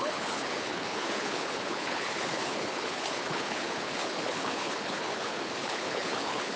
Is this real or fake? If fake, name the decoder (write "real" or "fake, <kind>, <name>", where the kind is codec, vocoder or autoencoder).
fake, codec, HILCodec